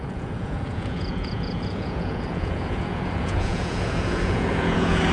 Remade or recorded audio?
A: remade